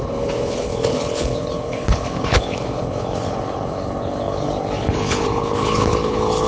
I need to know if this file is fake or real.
fake